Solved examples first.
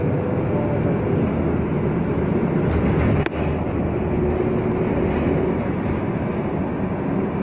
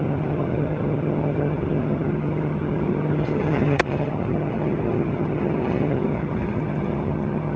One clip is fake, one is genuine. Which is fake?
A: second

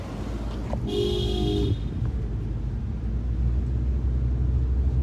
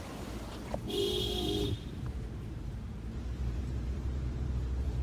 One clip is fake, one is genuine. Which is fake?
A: second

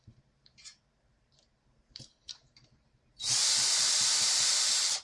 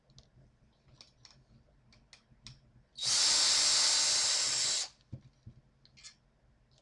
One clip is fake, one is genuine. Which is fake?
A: first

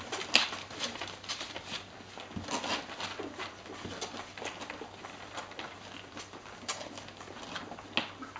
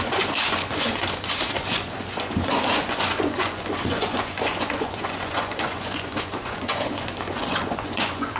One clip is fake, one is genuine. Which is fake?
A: second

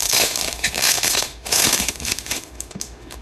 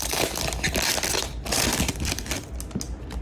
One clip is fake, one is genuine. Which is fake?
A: first